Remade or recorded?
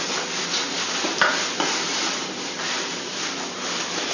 recorded